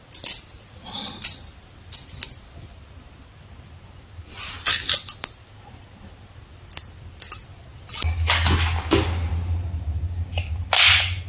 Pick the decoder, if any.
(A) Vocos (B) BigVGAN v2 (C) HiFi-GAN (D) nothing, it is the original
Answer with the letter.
D